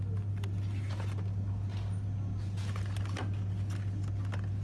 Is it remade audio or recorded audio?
recorded